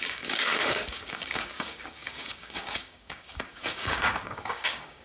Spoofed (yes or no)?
yes